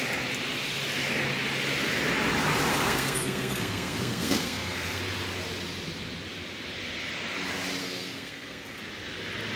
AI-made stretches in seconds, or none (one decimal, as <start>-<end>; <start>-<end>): 2.7-5.0; 7.8-8.8